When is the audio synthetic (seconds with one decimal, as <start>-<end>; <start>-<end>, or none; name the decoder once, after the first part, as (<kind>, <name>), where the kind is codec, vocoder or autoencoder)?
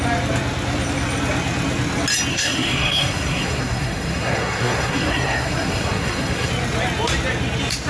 2.3-6.5 (codec, SNAC)